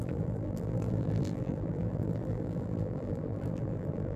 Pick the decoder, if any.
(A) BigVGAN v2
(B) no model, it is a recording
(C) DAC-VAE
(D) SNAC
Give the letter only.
A